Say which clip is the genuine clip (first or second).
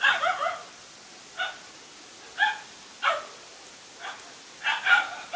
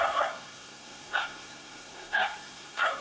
first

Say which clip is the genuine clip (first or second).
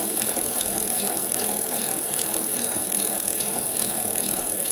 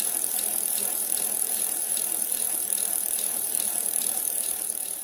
second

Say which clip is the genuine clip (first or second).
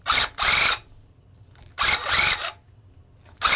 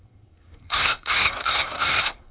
first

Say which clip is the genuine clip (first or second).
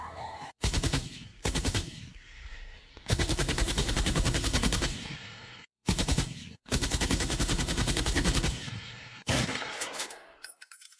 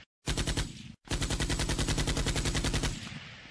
second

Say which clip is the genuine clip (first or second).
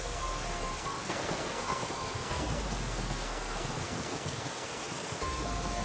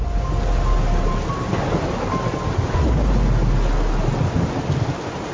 second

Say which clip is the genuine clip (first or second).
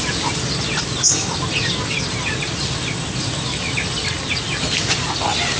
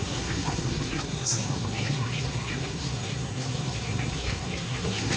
first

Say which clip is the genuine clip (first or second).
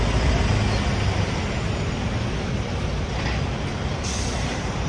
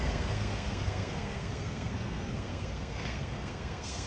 first